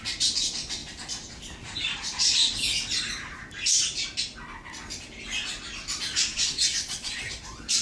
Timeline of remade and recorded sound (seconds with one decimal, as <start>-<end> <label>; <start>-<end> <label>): 0.0-6.3 recorded; 6.3-7.3 remade; 7.3-7.8 recorded